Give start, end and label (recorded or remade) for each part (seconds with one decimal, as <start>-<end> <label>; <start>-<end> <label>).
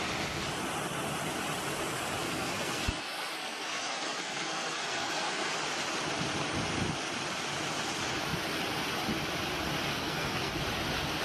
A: 0.0-2.2 recorded; 2.2-5.5 remade; 5.5-9.9 recorded; 9.9-10.5 remade; 10.5-11.2 recorded